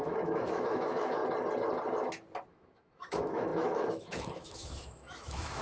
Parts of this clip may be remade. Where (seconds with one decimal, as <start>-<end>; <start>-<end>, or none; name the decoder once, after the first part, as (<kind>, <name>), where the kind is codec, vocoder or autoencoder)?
0.0-1.2 (autoencoder, DAC-VAE); 2.5-5.6